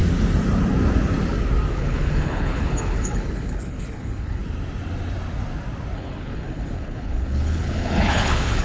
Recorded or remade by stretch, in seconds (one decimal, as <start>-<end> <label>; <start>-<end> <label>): 0.0-1.7 recorded; 1.7-4.4 remade; 4.4-5.9 recorded; 5.9-8.6 remade